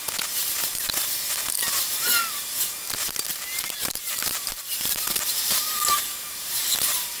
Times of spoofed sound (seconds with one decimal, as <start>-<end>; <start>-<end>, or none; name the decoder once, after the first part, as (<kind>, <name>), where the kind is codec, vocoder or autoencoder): 0.4-0.9 (vocoder, BigVGAN v2); 3.3-7.2